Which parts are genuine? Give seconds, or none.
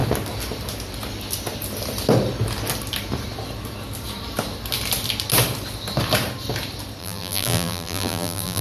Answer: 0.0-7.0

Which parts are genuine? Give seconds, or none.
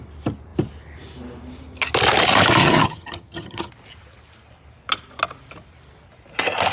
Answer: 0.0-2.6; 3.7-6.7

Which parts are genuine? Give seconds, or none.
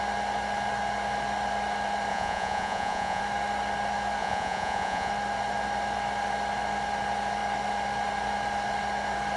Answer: 0.0-2.1; 3.2-4.2; 5.1-9.4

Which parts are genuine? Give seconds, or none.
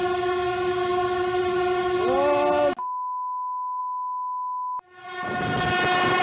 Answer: 0.0-6.2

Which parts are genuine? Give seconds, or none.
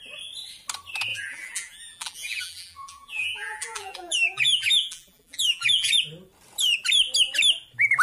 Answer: 0.0-1.1; 5.9-8.0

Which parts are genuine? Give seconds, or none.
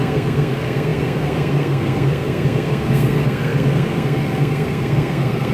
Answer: none